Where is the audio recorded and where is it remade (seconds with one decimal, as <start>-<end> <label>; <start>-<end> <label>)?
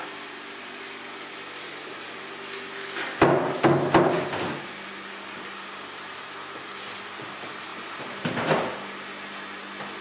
0.0-10.0 recorded